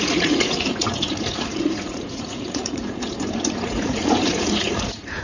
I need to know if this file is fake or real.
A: fake